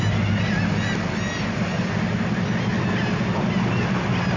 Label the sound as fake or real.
real